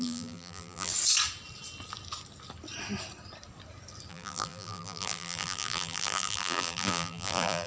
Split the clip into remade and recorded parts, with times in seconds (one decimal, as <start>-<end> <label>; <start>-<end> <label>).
0.0-0.9 remade; 0.9-4.1 recorded; 4.1-7.7 remade

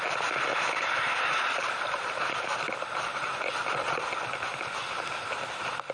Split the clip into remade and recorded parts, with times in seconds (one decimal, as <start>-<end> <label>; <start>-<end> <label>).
0.0-0.5 recorded; 0.5-4.0 remade; 4.0-5.9 recorded

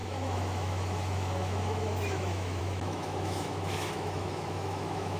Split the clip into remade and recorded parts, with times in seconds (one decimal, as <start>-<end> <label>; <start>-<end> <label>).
0.0-5.2 remade

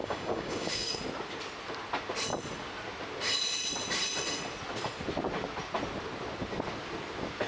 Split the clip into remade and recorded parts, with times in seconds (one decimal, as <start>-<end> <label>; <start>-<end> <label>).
0.0-1.0 remade; 1.0-7.5 recorded